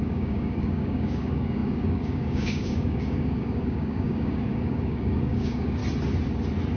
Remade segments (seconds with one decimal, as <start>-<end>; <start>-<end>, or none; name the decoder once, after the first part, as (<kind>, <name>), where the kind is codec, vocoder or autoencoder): 0.0-5.8 (codec, DAC)